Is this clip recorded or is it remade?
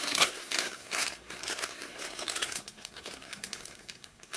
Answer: remade